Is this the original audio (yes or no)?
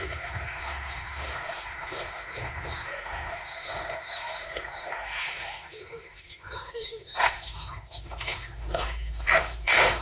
no